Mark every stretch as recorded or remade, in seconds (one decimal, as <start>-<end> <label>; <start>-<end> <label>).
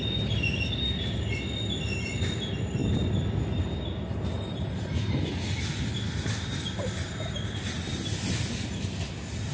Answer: 0.0-9.5 recorded